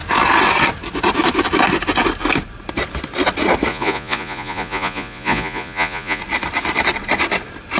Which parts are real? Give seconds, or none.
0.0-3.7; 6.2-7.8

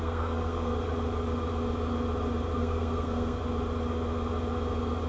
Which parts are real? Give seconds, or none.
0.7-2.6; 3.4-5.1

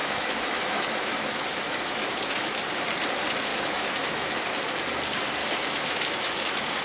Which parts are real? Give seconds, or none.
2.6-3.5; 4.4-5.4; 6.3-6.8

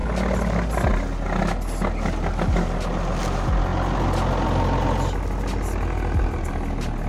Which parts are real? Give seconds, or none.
0.0-7.1

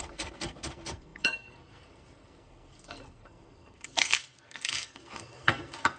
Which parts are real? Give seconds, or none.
none

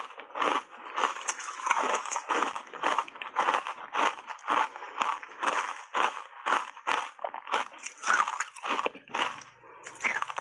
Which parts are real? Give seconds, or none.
0.0-0.7; 3.3-4.7; 6.9-10.4